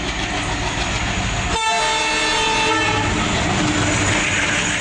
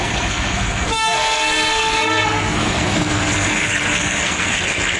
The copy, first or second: second